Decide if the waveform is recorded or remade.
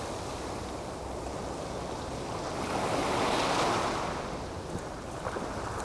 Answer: recorded